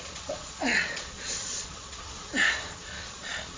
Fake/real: fake